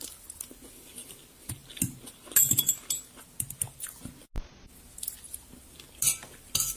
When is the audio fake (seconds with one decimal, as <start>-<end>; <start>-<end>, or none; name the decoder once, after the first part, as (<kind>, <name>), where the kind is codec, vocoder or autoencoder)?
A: none